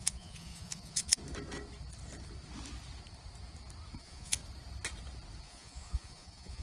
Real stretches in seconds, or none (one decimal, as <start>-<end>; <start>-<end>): 1.2-4.0; 4.4-5.4